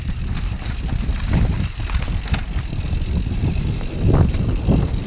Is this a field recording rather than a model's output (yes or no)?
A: yes